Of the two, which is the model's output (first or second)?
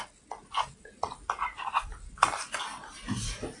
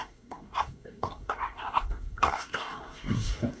second